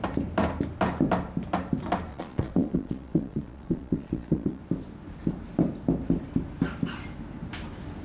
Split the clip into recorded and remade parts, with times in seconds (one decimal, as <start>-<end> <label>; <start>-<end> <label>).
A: 0.0-2.1 recorded; 2.1-4.6 remade; 4.6-8.0 recorded